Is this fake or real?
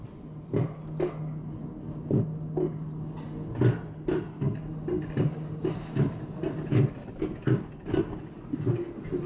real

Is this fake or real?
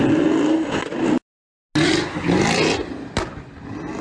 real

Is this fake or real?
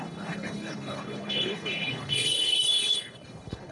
fake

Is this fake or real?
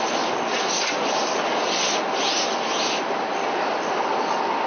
real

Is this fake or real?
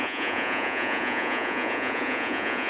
fake